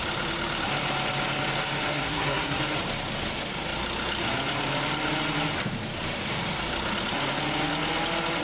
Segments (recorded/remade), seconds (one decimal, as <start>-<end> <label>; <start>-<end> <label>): 0.0-1.9 recorded; 1.9-2.6 remade; 2.6-8.4 recorded